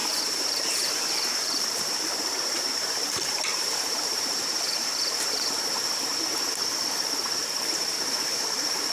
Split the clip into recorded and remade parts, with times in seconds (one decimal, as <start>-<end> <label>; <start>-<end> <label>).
0.0-6.1 remade; 6.1-7.4 recorded; 7.4-8.9 remade